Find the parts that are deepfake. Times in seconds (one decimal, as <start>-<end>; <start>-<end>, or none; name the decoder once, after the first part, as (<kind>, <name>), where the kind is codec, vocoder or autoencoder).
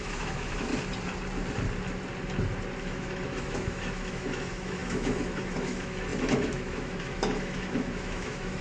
0.0-0.7 (autoencoder, DAC-VAE); 2.8-8.6